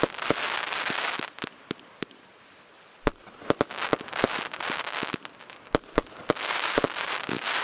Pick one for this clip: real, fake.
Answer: real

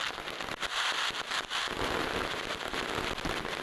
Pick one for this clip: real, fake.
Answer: real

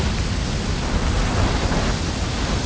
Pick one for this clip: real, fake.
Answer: real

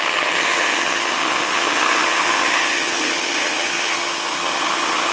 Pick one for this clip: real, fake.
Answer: fake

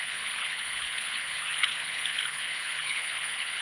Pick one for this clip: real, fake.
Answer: fake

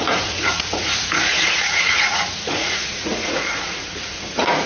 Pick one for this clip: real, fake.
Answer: fake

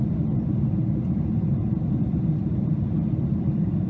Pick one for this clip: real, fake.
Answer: real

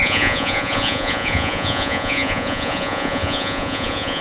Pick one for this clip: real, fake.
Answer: fake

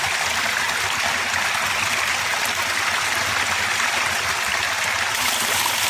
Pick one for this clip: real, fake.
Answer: real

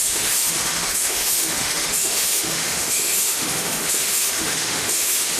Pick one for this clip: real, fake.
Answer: fake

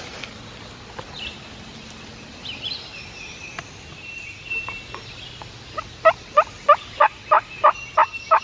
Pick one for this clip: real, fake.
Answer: real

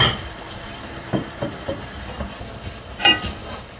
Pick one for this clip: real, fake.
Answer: fake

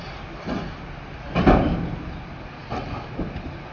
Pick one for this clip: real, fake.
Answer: real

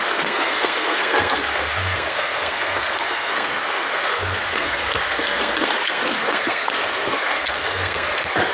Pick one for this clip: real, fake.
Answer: fake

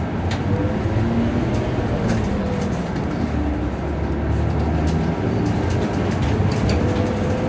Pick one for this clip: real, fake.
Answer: real